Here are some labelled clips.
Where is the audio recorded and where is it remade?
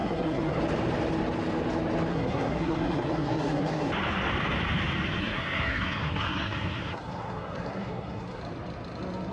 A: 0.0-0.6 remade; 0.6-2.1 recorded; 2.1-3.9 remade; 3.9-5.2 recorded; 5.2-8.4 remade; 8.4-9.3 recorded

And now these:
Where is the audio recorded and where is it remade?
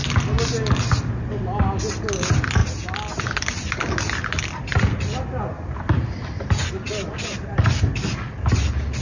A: 0.0-9.0 recorded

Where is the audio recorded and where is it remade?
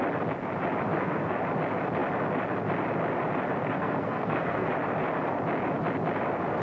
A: 0.0-0.9 recorded; 0.9-1.4 remade; 1.4-3.6 recorded; 3.6-4.7 remade; 4.7-6.6 recorded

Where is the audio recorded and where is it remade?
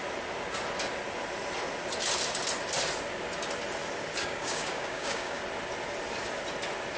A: 0.0-4.2 recorded; 4.2-5.4 remade; 5.4-7.0 recorded